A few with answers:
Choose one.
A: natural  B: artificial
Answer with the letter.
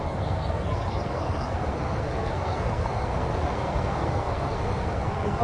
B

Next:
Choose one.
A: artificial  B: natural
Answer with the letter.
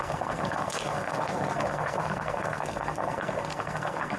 A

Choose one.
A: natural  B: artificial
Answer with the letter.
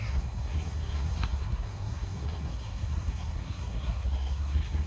B